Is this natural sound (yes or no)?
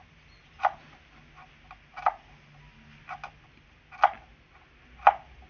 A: yes